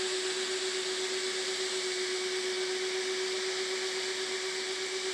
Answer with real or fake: real